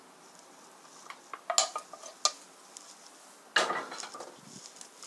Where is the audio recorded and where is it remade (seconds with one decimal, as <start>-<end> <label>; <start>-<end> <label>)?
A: 0.0-5.1 recorded